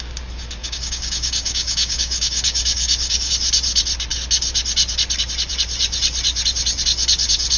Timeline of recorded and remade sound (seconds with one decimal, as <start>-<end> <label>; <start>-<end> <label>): 0.0-0.6 recorded; 0.6-3.3 remade; 3.3-7.6 recorded